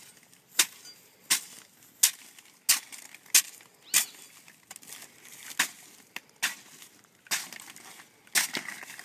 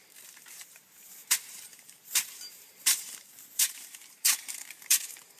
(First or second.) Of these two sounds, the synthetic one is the second